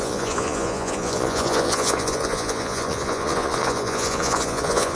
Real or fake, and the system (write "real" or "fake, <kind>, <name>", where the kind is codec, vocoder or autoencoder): fake, vocoder, Vocos